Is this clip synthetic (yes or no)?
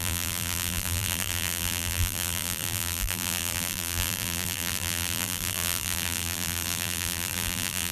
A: yes